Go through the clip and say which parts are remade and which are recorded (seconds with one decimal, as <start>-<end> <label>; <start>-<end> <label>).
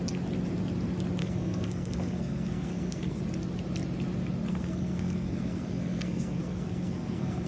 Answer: 0.0-1.2 recorded; 1.2-3.2 remade; 3.2-4.5 recorded; 4.5-7.5 remade